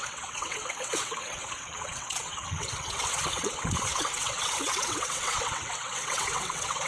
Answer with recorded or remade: remade